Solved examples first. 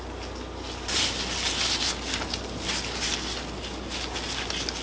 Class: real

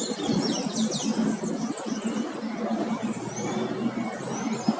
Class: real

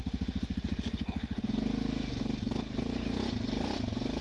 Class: real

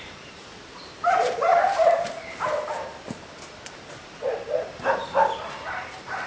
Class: fake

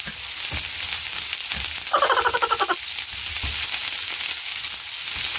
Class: real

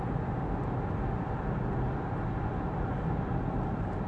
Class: real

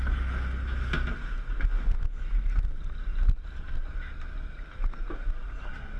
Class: real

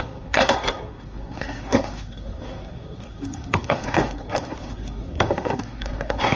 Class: fake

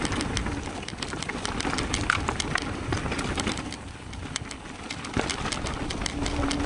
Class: real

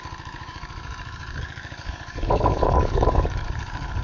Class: fake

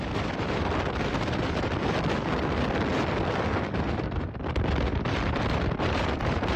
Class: fake